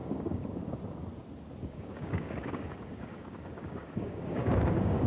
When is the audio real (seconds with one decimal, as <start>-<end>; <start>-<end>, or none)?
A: 0.7-1.6

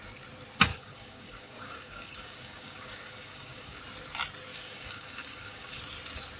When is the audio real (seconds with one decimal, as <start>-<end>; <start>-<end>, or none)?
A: 0.0-0.7; 3.8-4.5; 5.8-6.4

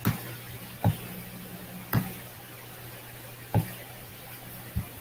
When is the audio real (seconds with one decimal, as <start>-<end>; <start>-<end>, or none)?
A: 0.0-5.0